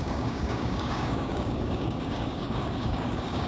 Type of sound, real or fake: fake